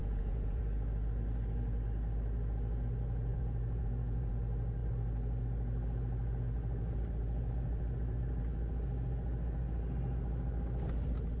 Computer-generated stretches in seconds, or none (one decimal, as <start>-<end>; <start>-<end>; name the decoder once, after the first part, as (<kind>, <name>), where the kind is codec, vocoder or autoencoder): 0.0-0.6 (vocoder, Vocos); 3.3-4.3